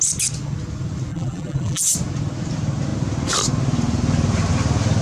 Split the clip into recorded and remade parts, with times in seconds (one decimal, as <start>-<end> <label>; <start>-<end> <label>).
0.0-1.1 recorded; 1.1-1.8 remade; 1.8-5.0 recorded